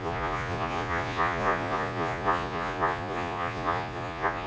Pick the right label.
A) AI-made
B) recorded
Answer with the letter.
A